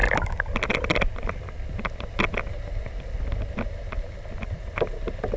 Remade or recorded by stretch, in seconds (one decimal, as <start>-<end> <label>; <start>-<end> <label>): 0.0-5.4 recorded